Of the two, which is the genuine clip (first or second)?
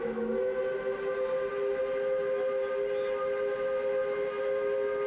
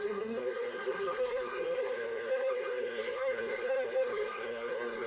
first